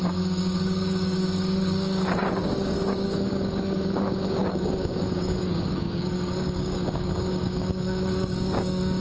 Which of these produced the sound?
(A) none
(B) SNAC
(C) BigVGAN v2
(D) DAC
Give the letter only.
D